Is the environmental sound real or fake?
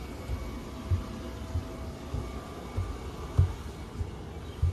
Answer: real